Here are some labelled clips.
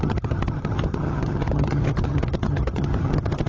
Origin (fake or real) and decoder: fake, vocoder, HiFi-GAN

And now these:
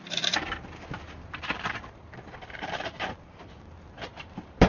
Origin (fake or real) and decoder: fake, vocoder, BigVGAN v2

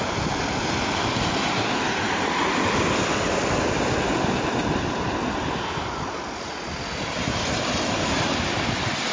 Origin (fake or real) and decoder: real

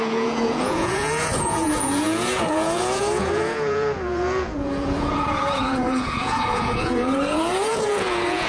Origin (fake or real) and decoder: fake, vocoder, Vocos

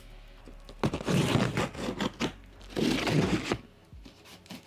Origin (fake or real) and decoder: real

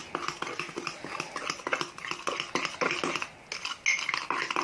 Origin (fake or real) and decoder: real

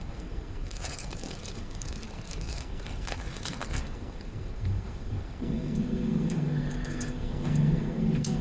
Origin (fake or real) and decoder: fake, codec, SNAC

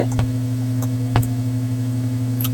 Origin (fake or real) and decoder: fake, autoencoder, DAC-VAE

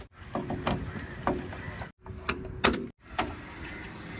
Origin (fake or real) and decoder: real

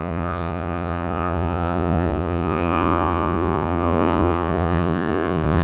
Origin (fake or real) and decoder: fake, vocoder, Vocos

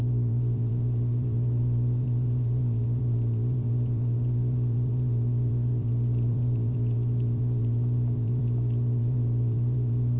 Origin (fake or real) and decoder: fake, vocoder, BigVGAN v2